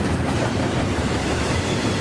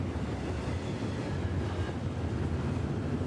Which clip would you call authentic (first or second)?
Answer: second